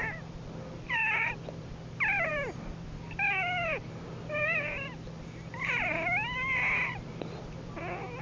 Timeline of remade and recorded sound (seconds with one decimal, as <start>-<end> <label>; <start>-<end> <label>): 0.0-5.9 remade; 5.9-6.7 recorded; 6.7-8.2 remade